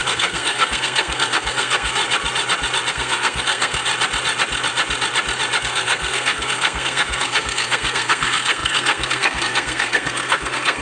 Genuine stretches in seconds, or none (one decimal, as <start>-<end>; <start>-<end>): 2.0-2.9; 3.9-5.6